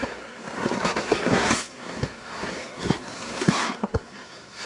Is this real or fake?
fake